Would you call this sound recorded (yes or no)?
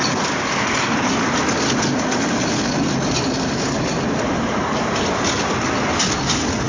yes